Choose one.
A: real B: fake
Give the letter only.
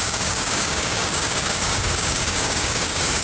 B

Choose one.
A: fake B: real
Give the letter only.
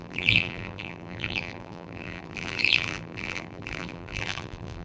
A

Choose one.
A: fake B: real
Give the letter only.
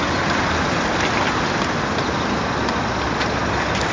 B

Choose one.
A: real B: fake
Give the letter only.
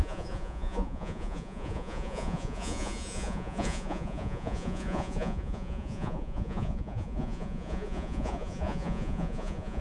B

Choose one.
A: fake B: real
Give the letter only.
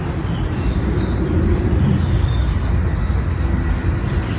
B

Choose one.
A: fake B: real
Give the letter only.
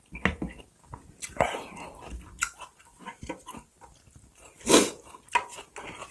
B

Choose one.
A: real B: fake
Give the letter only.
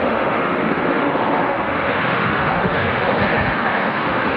B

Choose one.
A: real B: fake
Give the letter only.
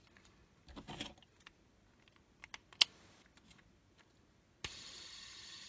A